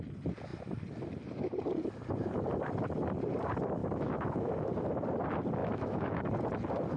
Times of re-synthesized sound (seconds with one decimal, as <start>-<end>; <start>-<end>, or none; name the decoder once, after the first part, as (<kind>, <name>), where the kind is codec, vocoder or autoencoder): 3.8-4.5 (autoencoder, DAC-VAE); 5.6-6.3